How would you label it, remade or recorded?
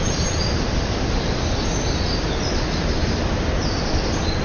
recorded